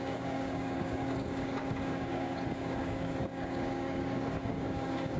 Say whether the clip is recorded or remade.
remade